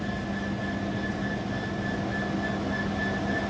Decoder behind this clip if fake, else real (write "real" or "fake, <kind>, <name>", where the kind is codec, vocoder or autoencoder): real